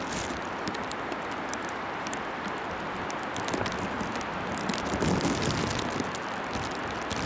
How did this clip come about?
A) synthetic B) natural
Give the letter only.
B